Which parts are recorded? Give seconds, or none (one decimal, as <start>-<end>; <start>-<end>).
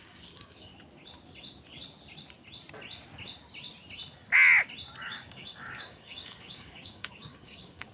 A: 0.7-5.0